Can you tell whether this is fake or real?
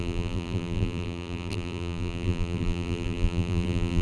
fake